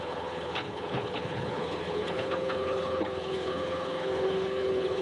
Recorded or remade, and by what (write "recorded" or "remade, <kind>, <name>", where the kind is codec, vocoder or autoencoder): remade, codec, HILCodec